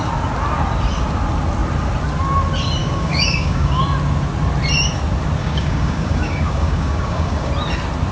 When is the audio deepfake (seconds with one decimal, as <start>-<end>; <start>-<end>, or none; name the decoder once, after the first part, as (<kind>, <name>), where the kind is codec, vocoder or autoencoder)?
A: 2.8-3.8 (codec, DAC); 5.4-7.5